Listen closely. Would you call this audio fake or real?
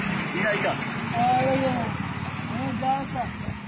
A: real